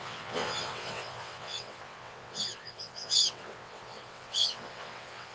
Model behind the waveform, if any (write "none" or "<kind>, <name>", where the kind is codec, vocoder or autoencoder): vocoder, WaveNeXt